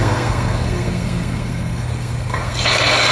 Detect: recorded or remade remade